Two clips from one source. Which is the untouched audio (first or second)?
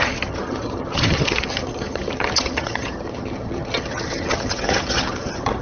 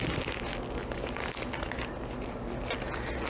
second